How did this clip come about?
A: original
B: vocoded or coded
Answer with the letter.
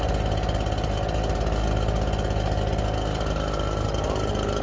A